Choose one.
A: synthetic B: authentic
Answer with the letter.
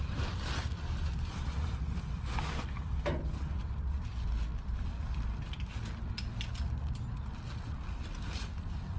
B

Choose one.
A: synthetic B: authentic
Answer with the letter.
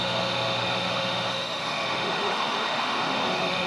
A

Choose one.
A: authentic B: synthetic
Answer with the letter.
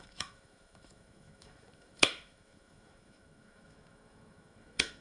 B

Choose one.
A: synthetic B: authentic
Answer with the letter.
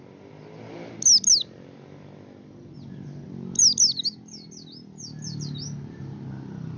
B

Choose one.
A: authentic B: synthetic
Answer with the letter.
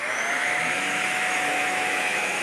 B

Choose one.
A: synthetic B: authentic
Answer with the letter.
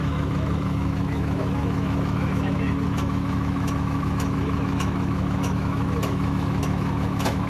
A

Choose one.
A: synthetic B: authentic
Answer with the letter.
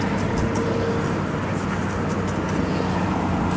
B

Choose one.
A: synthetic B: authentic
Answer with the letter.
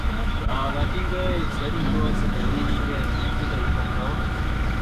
A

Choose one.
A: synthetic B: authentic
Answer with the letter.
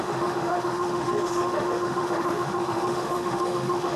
A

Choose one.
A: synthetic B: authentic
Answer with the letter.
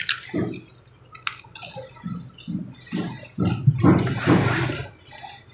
B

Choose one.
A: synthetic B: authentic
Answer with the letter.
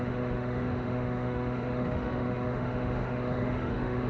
A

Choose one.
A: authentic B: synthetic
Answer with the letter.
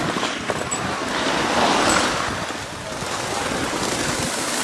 A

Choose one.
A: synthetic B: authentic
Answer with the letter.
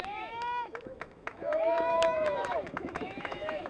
A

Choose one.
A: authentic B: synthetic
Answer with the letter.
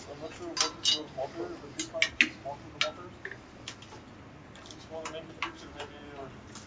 A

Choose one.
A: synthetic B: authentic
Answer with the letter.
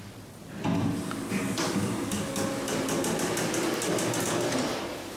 B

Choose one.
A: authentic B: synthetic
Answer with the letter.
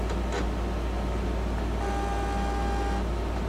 A